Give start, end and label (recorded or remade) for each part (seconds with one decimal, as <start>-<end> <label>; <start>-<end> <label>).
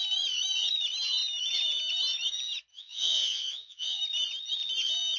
0.0-2.7 recorded; 2.7-4.0 remade; 4.0-5.2 recorded